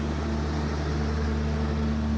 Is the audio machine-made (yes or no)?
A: no